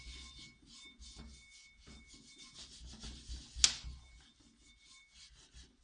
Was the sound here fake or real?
real